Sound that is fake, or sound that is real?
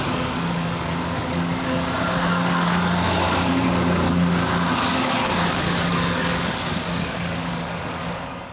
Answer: fake